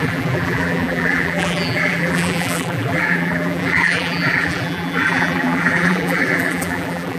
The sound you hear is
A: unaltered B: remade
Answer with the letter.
B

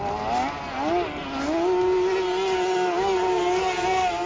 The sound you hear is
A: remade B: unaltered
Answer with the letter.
B